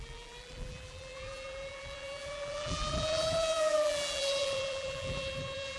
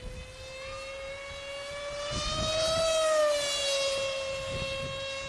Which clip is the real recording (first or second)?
second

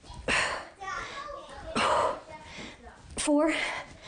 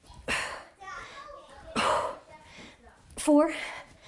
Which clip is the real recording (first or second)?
first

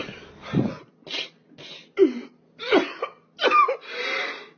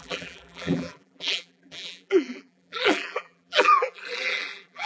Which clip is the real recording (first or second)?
first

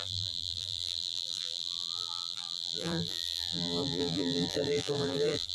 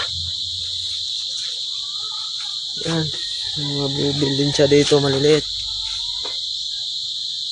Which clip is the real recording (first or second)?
second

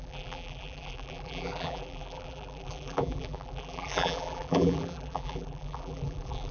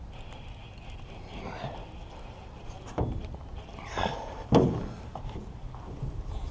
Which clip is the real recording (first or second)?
second